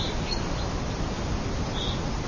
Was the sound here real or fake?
real